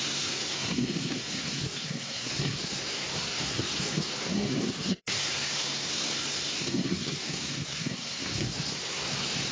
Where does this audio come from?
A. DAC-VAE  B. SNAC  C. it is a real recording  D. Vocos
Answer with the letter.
B